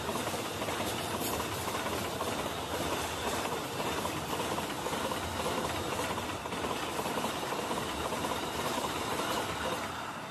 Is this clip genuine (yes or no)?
no